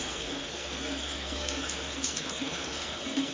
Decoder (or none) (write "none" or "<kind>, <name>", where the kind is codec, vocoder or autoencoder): codec, SNAC